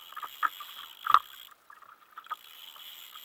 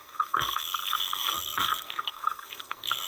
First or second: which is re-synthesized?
second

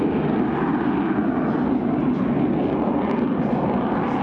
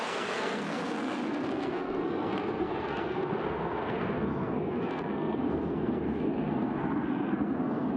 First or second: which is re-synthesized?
second